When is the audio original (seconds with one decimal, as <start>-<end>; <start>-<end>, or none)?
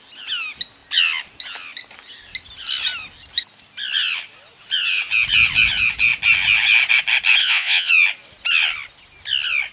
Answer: 0.0-7.4; 7.9-9.7